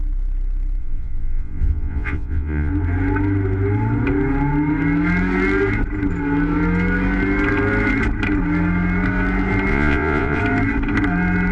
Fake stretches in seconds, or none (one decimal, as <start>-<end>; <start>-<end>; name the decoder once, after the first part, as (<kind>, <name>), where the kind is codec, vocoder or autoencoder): 0.8-2.7 (vocoder, Vocos); 9.7-10.4